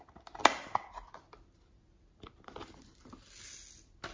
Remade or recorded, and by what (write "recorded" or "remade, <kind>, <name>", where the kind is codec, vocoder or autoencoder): recorded